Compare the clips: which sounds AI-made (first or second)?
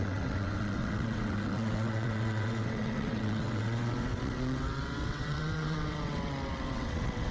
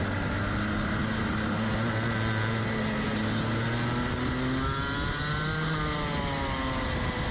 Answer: first